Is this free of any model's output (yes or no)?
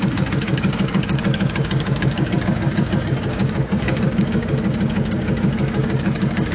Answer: no